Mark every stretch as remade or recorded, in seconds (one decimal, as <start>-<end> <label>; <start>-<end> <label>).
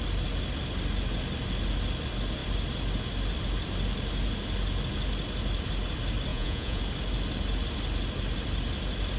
0.0-6.3 recorded; 6.3-6.8 remade; 6.8-9.2 recorded